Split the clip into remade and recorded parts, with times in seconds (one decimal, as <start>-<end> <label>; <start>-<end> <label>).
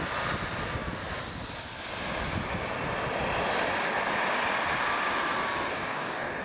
0.0-5.7 recorded; 5.7-6.4 remade